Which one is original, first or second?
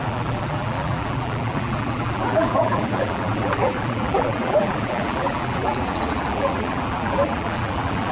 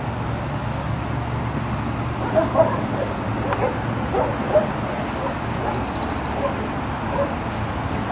second